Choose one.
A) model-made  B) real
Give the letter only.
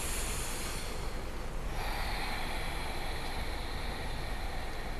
B